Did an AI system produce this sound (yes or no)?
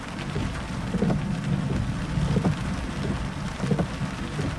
yes